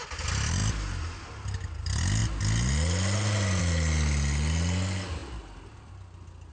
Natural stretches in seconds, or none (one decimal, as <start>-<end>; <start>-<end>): 0.0-6.5